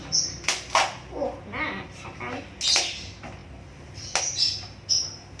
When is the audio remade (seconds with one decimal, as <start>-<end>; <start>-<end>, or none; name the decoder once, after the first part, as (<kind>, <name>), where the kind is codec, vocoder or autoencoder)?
none